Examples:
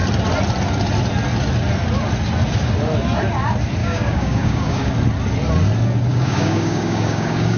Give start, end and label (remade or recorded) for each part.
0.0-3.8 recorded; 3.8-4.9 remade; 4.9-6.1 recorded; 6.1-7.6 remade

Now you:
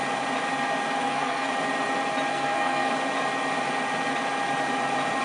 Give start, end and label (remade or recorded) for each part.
0.0-1.0 recorded; 1.0-1.5 remade; 1.5-2.3 recorded; 2.3-2.9 remade; 2.9-5.2 recorded

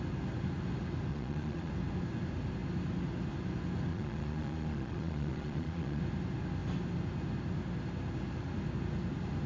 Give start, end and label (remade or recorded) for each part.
0.0-1.1 recorded; 1.1-1.7 remade; 1.7-3.9 recorded; 3.9-6.0 remade; 6.0-9.5 recorded

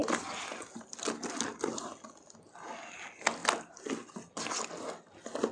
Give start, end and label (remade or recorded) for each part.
0.0-5.5 recorded

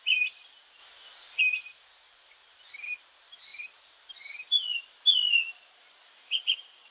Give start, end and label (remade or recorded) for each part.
0.0-6.0 recorded; 6.0-6.9 remade

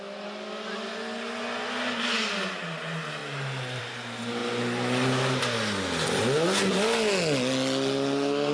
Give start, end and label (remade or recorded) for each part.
0.0-8.5 recorded